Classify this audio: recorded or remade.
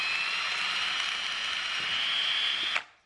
recorded